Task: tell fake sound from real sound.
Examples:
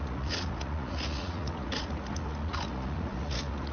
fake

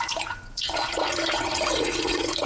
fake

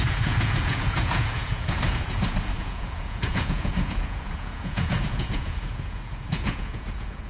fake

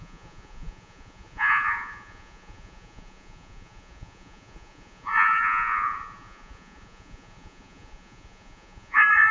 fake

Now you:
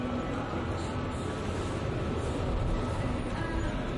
real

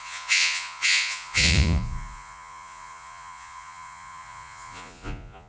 fake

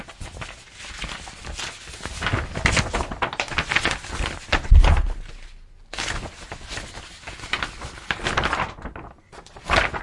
real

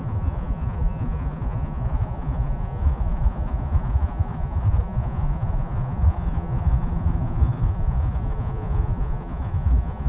fake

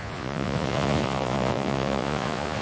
fake